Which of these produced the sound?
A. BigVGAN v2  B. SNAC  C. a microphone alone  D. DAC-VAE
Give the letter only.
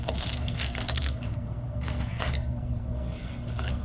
B